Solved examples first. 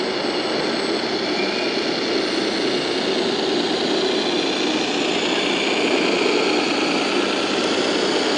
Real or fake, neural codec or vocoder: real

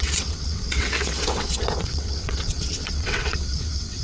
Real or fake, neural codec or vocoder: fake, vocoder, WaveNeXt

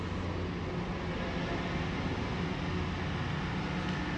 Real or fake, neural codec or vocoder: real